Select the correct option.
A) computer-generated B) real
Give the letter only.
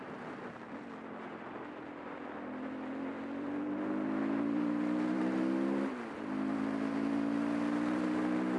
B